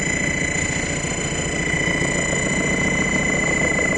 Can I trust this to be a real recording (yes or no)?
yes